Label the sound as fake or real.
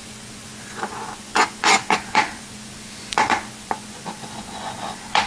fake